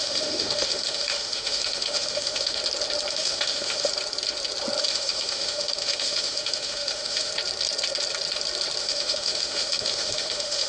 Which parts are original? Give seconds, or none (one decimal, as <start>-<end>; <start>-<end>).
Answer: 2.6-3.1; 3.9-4.8; 7.3-8.8